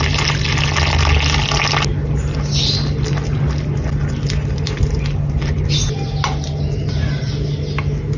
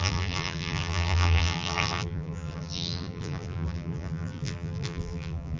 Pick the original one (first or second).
first